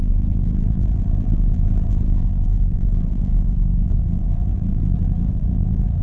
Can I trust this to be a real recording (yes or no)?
no